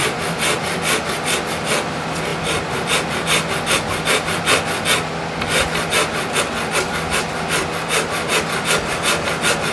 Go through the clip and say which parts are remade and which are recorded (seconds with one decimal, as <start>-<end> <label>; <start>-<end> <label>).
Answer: 0.0-9.7 recorded